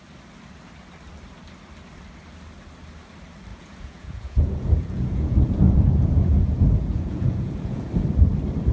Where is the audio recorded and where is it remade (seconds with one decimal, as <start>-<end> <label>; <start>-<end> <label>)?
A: 0.0-3.5 recorded; 3.5-7.9 remade; 7.9-8.7 recorded